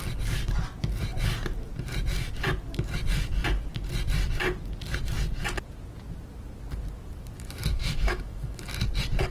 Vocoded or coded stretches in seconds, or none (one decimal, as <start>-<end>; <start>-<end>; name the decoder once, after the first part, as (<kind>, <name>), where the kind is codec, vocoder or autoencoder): 7.7-8.6 (autoencoder, DAC-VAE)